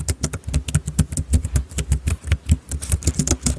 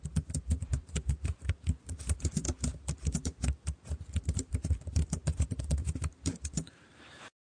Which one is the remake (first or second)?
second